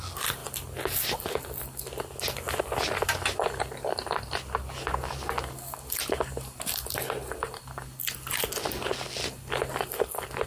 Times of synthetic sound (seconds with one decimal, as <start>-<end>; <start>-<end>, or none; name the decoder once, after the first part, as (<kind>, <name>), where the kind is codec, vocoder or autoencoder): none